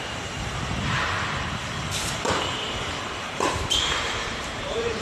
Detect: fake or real fake